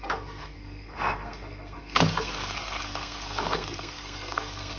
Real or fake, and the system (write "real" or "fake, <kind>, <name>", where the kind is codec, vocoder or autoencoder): fake, codec, SNAC